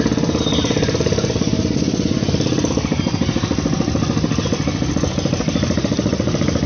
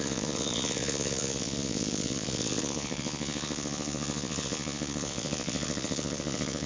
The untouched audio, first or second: first